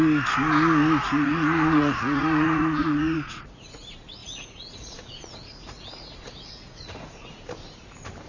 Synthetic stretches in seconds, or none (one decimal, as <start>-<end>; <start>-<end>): 1.0-3.8; 4.2-7.4